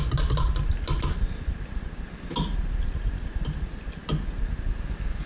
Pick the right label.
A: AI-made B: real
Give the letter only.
B